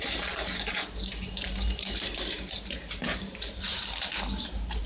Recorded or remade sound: remade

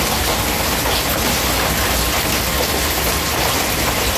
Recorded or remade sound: recorded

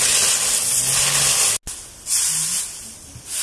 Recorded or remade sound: recorded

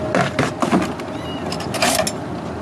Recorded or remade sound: recorded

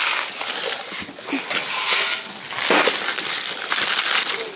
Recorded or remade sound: recorded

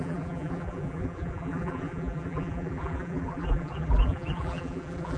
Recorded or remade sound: remade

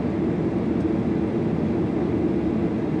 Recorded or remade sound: recorded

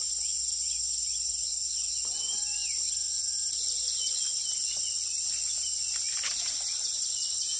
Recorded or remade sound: recorded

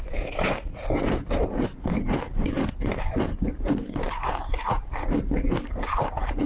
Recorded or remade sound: remade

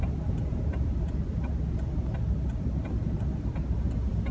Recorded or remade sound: recorded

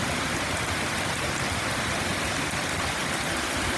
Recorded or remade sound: remade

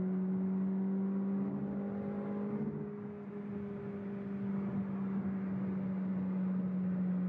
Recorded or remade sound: recorded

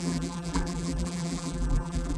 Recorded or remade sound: remade